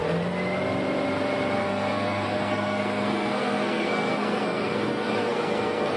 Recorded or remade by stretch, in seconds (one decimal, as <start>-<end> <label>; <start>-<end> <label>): 0.0-1.6 recorded; 1.6-6.0 remade